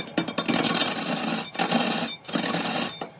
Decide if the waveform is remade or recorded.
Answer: recorded